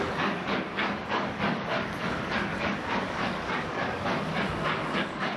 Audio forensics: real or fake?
fake